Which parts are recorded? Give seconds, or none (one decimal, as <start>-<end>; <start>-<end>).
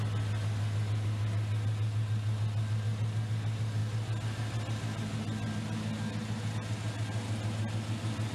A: 0.0-8.3